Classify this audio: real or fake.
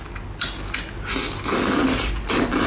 real